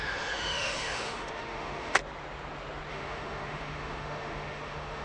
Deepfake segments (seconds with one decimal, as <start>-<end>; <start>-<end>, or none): 0.0-2.0; 2.9-5.0